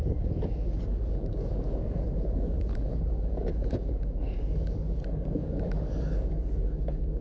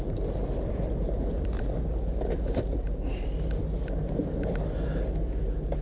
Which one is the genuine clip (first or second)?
second